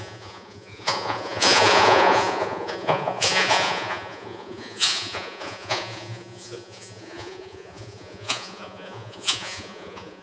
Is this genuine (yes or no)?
no